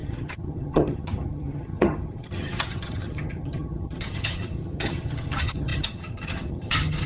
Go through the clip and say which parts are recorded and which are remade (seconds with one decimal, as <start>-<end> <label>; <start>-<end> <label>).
0.0-7.1 remade